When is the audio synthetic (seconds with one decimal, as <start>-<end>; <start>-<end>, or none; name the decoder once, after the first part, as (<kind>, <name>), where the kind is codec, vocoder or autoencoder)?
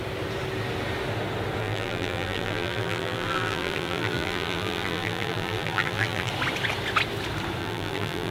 1.6-6.3 (vocoder, BigVGAN v2); 7.6-8.3